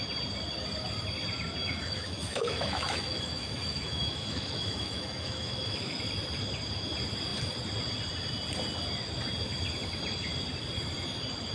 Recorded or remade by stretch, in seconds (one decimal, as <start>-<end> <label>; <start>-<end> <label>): 0.0-1.6 recorded; 1.6-6.0 remade; 6.0-11.5 recorded